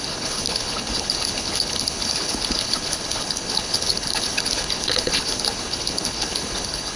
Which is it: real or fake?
fake